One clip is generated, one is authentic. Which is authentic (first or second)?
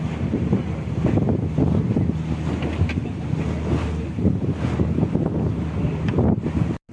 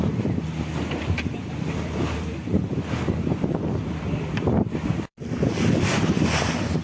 first